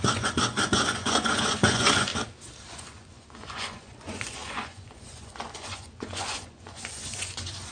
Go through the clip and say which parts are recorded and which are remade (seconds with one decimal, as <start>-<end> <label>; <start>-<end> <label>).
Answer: 0.0-2.1 remade; 2.1-2.7 recorded; 2.7-7.7 remade